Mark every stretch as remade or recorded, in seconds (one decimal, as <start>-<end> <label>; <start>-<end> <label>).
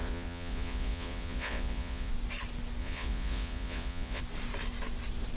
0.0-2.1 remade; 2.1-2.8 recorded; 2.8-4.2 remade; 4.2-5.4 recorded